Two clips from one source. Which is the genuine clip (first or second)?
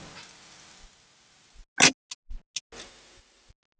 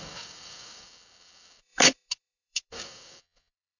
first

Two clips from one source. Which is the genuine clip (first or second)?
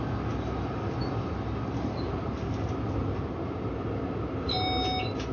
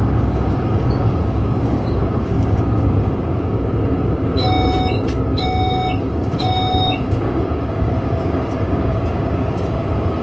first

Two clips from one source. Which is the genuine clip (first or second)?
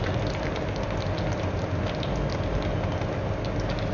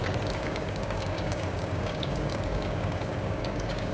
first